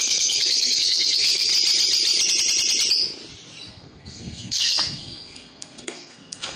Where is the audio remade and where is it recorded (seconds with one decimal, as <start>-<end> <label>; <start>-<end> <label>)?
0.0-1.5 remade; 1.5-3.7 recorded; 3.7-6.6 remade